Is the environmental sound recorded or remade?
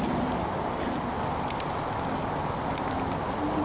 recorded